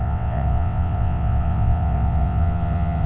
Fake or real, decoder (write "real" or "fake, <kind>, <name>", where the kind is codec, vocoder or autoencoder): fake, vocoder, WaveNeXt